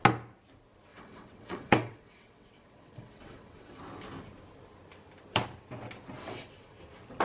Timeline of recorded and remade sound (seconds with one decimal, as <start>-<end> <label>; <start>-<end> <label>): 0.0-0.9 recorded; 0.9-3.8 remade; 3.8-6.2 recorded; 6.2-6.8 remade; 6.8-7.2 recorded